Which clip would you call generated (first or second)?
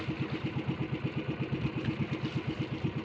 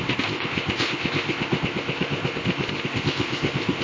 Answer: second